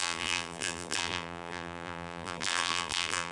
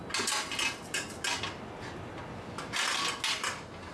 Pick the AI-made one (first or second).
first